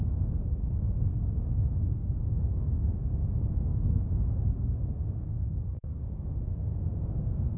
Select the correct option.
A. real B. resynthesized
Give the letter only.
B